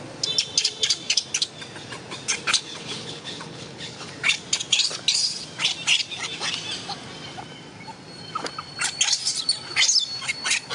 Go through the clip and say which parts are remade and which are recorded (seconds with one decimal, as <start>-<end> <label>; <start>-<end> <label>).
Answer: 0.0-2.5 recorded; 2.5-4.1 remade; 4.1-10.7 recorded